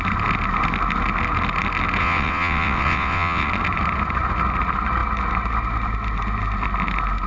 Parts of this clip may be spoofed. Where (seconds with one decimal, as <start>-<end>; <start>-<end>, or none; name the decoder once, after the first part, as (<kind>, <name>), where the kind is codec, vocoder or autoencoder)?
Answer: 2.0-3.5 (vocoder, WaveNeXt)